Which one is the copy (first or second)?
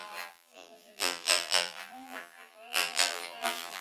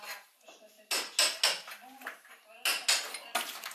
first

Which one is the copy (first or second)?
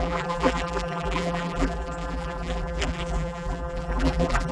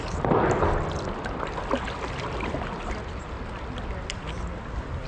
first